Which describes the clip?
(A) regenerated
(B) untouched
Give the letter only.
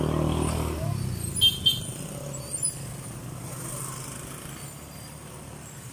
B